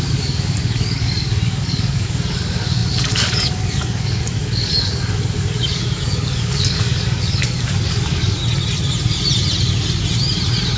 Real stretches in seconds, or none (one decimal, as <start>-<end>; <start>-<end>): 8.4-10.8